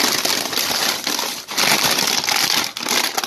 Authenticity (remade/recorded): recorded